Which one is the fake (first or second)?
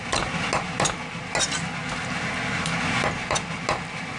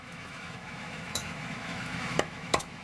second